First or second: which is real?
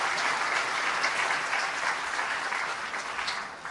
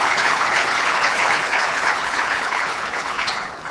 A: first